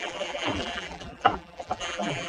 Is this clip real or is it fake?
fake